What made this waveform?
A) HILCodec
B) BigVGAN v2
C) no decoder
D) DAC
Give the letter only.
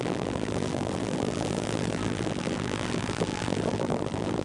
B